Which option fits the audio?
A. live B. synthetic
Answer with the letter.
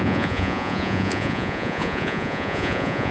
B